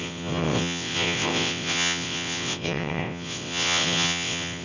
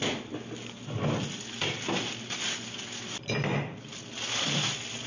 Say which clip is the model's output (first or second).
first